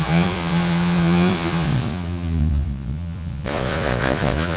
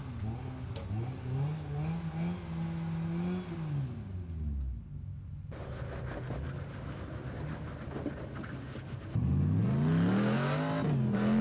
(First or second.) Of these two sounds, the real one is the second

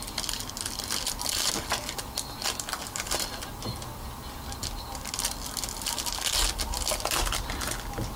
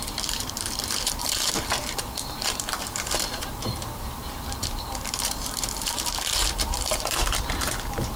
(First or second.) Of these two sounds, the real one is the first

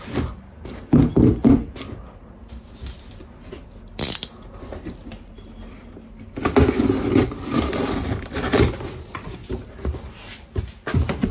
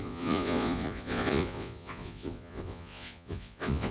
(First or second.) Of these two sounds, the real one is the first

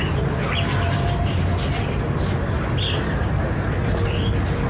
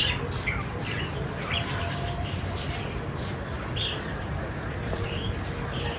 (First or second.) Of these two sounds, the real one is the first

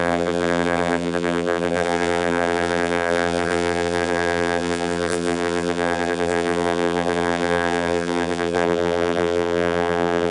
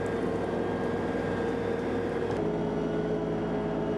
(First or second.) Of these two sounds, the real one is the second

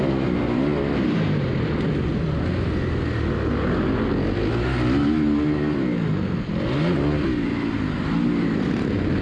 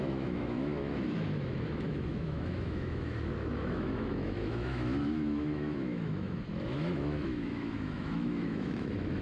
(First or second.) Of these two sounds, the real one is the first